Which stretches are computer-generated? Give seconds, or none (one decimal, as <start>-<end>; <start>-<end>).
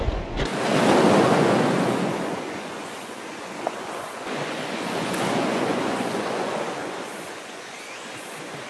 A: 0.0-0.5; 1.2-8.7